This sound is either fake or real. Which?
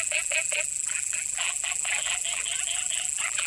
fake